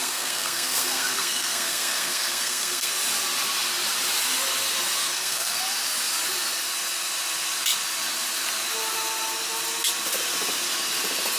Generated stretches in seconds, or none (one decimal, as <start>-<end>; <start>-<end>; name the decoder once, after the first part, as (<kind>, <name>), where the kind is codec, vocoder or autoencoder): 0.0-2.9 (codec, SNAC); 5.0-5.6